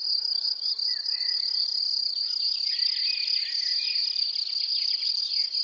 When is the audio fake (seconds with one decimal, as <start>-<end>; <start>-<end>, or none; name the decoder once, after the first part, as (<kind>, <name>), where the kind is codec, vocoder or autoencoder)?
none